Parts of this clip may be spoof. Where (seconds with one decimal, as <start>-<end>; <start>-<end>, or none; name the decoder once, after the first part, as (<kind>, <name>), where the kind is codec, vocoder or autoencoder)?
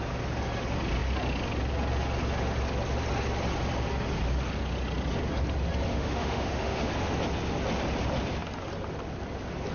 5.9-6.9 (autoencoder, DAC-VAE)